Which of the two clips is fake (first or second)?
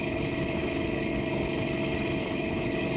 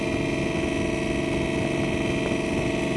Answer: first